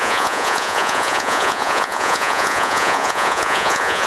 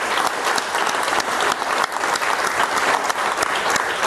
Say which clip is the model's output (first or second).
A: first